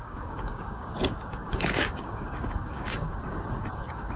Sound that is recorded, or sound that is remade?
remade